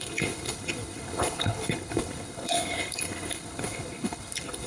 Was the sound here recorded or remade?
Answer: remade